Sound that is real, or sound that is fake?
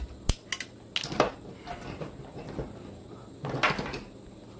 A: real